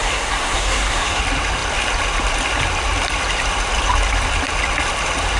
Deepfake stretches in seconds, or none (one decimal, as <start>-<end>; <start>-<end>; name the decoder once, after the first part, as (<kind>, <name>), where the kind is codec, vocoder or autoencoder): 0.0-1.2 (codec, SNAC)